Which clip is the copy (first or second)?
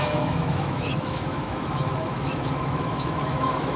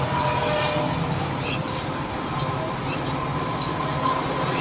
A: first